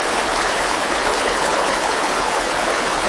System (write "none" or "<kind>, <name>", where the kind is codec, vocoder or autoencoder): codec, HILCodec